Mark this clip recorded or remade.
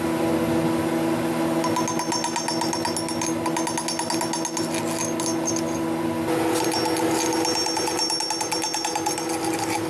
recorded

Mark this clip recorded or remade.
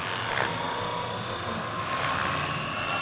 recorded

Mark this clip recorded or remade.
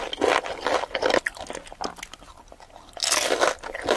recorded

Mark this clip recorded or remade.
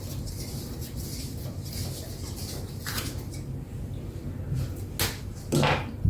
recorded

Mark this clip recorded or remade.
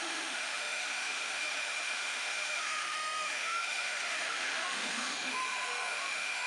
remade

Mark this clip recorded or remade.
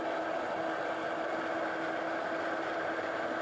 recorded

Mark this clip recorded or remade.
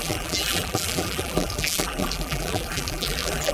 remade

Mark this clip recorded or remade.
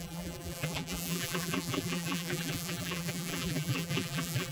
remade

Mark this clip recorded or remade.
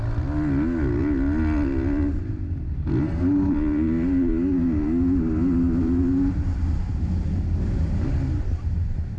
recorded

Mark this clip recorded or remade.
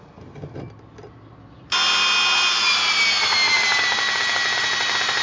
recorded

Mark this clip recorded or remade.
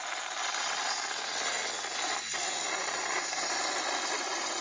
recorded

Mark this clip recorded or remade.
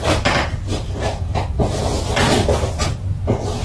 recorded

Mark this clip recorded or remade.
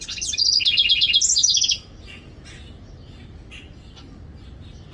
recorded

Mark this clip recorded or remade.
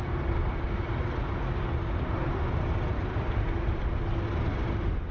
recorded